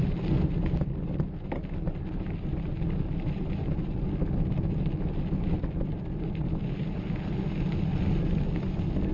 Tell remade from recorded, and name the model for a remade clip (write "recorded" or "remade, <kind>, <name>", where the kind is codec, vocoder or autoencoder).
recorded